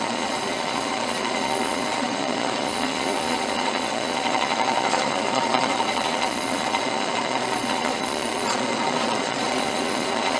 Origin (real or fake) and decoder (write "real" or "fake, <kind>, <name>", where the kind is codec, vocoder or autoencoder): fake, vocoder, Vocos